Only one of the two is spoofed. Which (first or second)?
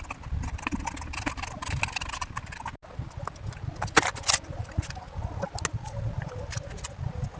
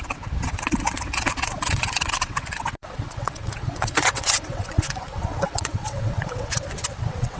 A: second